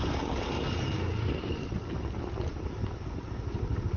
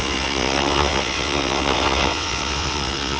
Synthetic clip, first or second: second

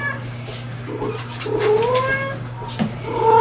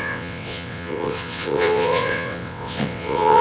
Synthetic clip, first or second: second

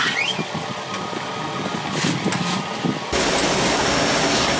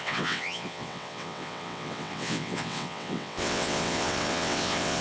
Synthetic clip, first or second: second